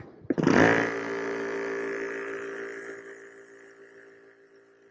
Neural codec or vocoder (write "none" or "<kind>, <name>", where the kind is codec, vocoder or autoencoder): none